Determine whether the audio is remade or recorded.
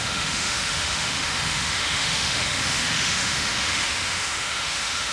remade